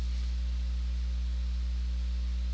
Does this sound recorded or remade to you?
recorded